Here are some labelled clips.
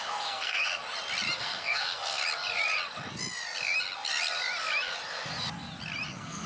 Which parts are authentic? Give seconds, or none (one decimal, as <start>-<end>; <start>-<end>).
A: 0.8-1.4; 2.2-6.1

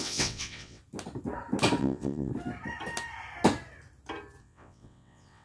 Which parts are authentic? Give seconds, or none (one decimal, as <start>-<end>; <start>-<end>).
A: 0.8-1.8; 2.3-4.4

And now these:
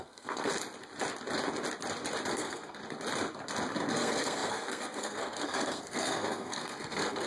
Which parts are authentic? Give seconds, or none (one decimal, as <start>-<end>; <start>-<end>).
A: 0.5-2.3; 2.8-3.9